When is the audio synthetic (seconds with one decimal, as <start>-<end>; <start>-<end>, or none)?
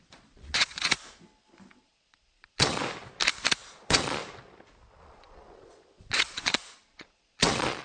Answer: 0.0-0.9; 1.7-2.8; 3.7-4.2; 5.0-7.8